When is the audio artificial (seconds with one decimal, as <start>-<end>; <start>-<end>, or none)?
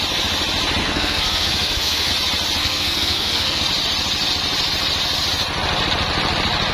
0.8-2.1; 2.6-3.6